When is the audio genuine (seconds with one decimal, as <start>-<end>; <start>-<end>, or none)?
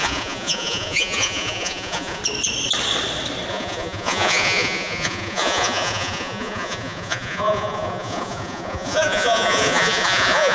2.2-3.5